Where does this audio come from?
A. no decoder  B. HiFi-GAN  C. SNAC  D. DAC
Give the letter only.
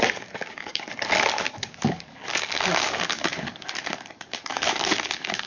D